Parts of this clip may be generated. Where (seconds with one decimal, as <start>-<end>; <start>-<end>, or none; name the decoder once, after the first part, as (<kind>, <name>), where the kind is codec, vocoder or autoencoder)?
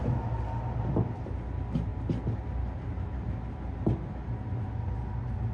none